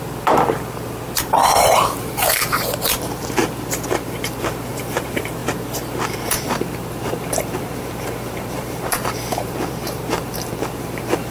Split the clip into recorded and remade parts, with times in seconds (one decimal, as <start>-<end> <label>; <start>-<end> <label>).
0.0-11.3 remade